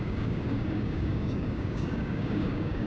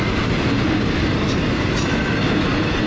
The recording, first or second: second